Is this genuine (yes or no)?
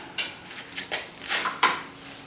yes